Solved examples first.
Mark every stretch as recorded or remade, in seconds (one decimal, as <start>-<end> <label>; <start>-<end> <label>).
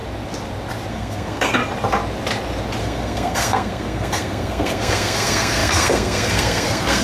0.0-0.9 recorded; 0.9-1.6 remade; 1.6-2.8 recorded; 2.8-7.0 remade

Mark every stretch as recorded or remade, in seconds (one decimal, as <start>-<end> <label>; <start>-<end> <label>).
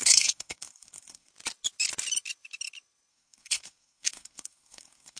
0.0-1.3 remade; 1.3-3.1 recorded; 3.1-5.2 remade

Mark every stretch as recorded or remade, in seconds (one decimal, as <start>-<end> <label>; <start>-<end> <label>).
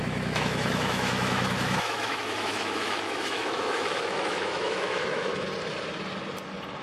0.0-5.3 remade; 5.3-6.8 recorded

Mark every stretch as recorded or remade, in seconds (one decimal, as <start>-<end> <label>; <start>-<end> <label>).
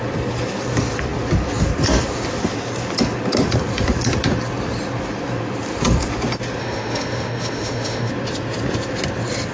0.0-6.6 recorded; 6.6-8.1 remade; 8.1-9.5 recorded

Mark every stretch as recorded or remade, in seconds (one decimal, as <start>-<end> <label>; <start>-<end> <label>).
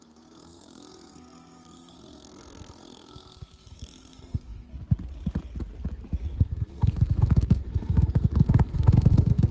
0.0-4.7 remade; 4.7-6.4 recorded; 6.4-9.5 remade